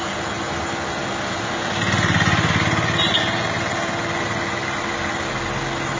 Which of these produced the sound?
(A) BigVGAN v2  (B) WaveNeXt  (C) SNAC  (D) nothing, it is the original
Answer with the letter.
D